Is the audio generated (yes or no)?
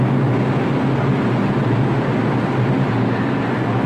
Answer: no